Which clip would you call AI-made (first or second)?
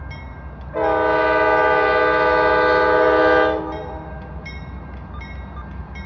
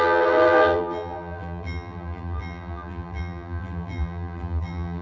second